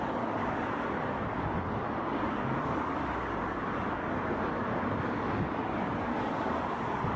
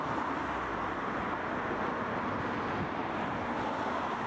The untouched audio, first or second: second